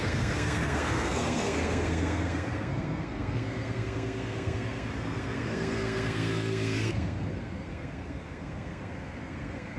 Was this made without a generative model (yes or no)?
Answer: no